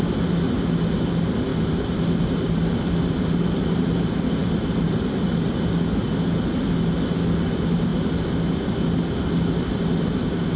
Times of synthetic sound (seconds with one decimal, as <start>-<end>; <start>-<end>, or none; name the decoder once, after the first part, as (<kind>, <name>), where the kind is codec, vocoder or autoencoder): 1.5-5.5 (vocoder, BigVGAN v2)